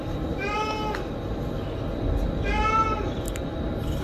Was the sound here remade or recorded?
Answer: recorded